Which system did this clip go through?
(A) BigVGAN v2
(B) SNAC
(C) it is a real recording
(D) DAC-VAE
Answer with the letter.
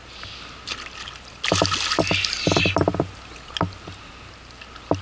C